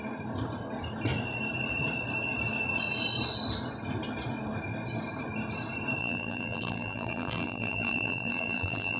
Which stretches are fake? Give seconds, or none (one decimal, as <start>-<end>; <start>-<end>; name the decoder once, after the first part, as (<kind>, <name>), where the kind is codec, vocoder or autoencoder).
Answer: 6.0-9.0 (vocoder, BigVGAN v2)